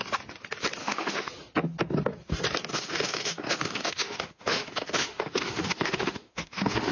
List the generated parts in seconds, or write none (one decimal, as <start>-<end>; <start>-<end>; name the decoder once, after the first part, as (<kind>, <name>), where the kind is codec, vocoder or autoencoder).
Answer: 0.8-1.3 (autoencoder, DAC-VAE); 2.7-6.9

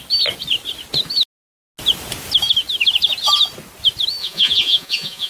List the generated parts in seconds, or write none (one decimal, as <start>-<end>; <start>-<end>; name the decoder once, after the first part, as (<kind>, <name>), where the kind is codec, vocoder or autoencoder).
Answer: 4.2-5.3 (vocoder, Vocos)